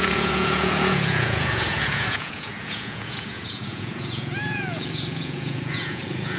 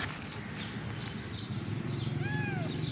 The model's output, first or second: first